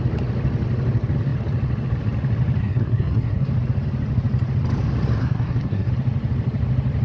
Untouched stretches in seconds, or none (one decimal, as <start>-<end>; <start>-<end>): 0.0-2.6; 3.5-5.2; 5.9-7.0